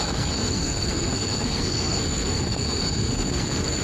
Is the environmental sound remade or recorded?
remade